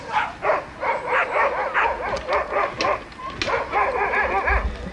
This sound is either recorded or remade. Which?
recorded